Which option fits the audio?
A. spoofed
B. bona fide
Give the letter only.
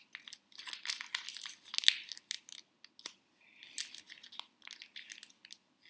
B